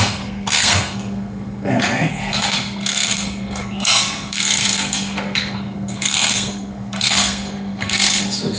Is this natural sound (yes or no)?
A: no